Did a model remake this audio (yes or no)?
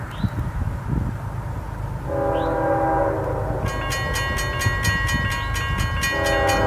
no